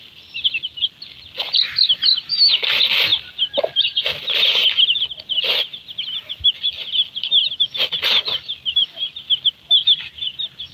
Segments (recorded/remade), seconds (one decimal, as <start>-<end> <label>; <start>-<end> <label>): 0.0-10.7 recorded